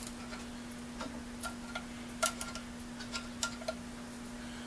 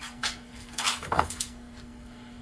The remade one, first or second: second